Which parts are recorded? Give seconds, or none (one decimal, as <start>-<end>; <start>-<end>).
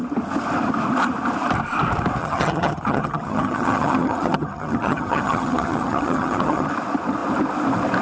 0.0-2.2; 6.7-8.0